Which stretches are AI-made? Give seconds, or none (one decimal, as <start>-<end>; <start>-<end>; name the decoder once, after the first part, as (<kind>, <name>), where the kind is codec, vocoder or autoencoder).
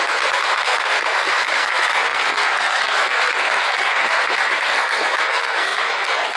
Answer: 0.0-6.4 (codec, SNAC)